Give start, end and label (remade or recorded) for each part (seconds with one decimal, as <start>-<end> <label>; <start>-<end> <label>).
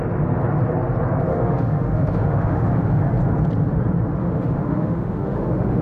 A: 0.0-1.3 recorded; 1.3-3.0 remade; 3.0-4.2 recorded; 4.2-5.8 remade